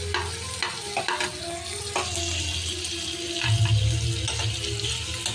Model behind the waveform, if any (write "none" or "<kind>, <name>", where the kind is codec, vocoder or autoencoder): none